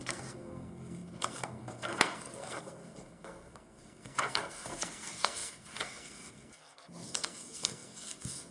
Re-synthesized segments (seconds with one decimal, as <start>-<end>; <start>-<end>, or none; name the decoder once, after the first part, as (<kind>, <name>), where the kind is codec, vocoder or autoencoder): 0.0-8.5 (codec, SNAC)